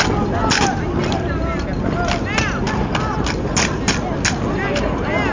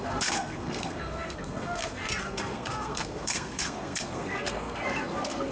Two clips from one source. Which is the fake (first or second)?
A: second